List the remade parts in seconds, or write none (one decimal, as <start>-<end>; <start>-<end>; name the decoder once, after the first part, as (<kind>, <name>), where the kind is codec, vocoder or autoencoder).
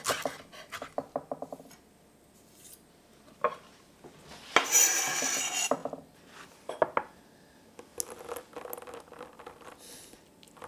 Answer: none